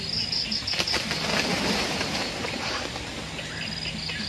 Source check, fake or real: real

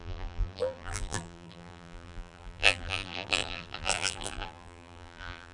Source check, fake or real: fake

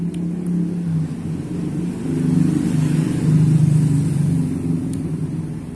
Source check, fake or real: real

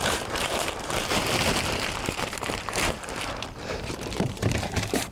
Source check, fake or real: fake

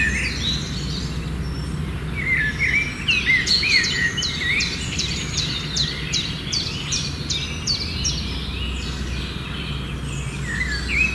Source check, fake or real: real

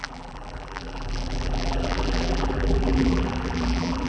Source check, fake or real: fake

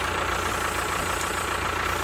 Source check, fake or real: real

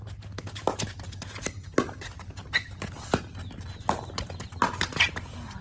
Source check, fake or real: real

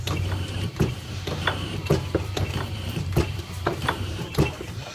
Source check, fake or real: fake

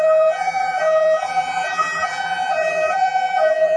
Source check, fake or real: fake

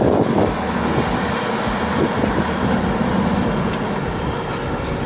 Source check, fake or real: real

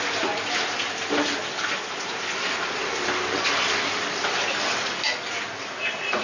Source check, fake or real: real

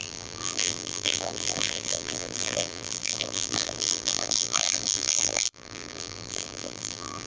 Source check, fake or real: fake